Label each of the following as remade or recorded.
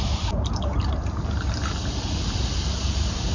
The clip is remade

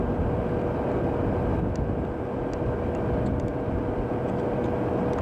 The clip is recorded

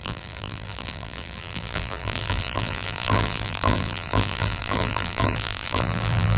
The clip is remade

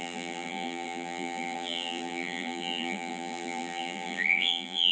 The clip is remade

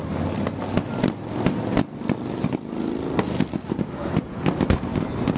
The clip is recorded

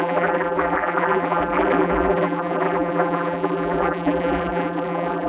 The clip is remade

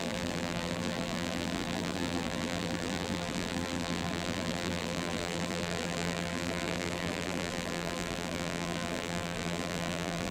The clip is remade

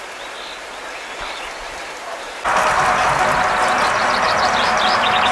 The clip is recorded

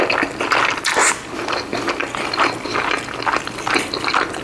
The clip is recorded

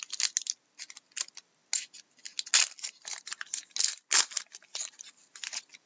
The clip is recorded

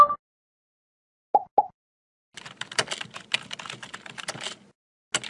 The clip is recorded